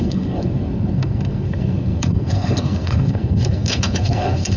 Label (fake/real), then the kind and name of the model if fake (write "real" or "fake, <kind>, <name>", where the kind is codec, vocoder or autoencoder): fake, codec, SNAC